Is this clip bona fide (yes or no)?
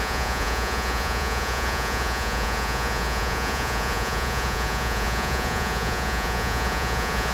no